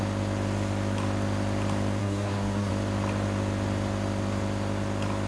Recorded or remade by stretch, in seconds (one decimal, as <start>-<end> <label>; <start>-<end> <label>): 0.0-2.0 recorded; 2.0-2.7 remade; 2.7-5.3 recorded